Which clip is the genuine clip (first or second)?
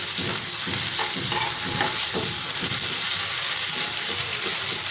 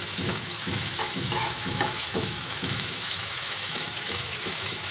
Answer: first